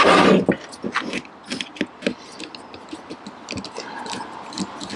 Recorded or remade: recorded